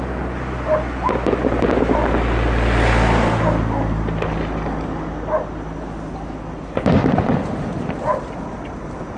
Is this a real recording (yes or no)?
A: yes